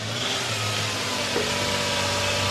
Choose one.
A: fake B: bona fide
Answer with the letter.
B